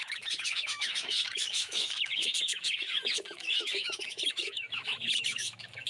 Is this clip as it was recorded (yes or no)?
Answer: no